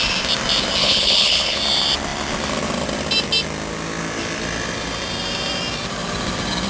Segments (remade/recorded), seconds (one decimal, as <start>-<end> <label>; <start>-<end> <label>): 0.0-0.8 recorded; 0.8-1.6 remade; 1.6-6.7 recorded